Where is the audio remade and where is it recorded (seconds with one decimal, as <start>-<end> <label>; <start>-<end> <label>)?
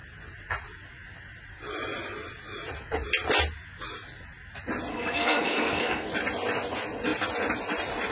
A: 0.0-4.9 recorded; 4.9-6.1 remade; 6.1-8.1 recorded